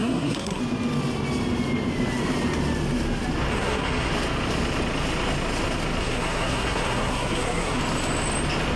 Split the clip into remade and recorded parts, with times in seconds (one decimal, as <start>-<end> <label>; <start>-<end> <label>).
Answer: 0.0-0.6 remade; 0.6-3.5 recorded; 3.5-4.1 remade; 4.1-6.0 recorded; 6.0-7.8 remade; 7.8-8.8 recorded